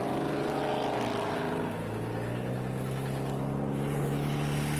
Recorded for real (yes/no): yes